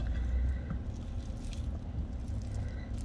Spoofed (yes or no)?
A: no